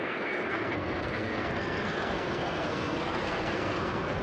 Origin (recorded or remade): remade